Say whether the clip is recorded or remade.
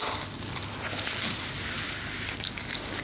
recorded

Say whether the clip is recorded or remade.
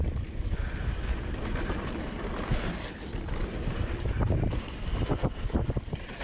recorded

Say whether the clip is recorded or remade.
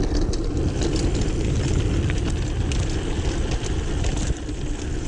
recorded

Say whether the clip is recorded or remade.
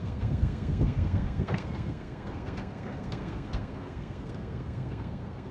remade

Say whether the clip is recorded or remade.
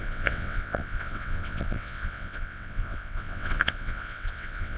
remade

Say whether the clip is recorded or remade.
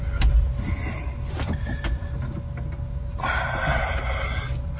recorded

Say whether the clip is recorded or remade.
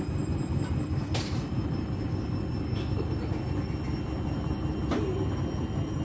recorded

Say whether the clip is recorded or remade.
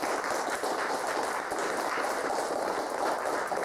recorded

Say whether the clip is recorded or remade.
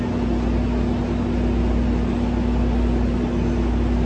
recorded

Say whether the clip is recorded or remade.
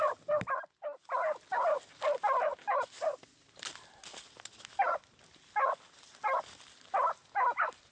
recorded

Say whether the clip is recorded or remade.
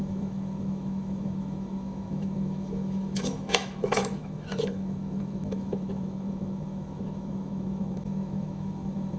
remade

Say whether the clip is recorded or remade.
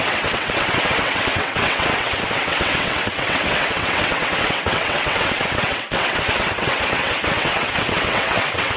remade